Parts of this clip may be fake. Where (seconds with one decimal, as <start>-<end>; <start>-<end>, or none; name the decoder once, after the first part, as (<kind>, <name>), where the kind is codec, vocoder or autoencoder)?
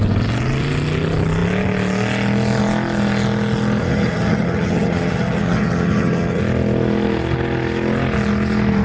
3.8-6.4 (vocoder, HiFi-GAN)